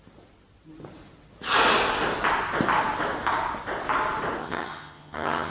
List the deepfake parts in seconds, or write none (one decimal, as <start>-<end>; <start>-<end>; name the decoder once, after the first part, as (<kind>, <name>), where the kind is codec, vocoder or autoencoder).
4.4-5.5 (vocoder, HiFi-GAN)